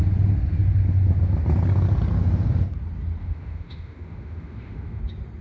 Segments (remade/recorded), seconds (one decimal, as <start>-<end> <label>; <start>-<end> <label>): 0.0-3.2 recorded; 3.2-5.0 remade; 5.0-5.4 recorded